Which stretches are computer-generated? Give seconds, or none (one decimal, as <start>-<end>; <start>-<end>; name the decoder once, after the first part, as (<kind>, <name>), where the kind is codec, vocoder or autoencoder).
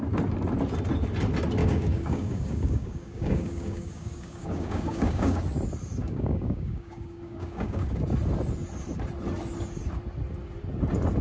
1.6-5.4 (codec, DAC); 6.0-8.0